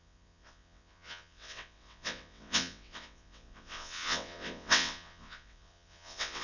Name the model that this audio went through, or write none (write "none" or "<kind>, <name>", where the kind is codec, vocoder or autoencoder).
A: vocoder, WaveNeXt